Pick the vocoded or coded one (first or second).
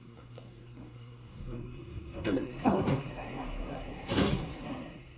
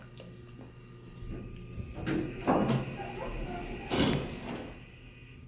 first